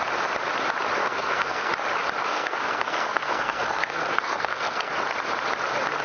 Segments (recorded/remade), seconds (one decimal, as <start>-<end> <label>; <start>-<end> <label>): 0.0-1.0 recorded; 1.0-1.7 remade; 1.7-2.3 recorded; 2.3-4.9 remade; 4.9-6.0 recorded